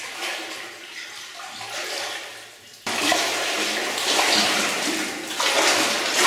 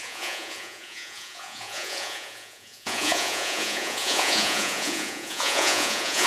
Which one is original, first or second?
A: first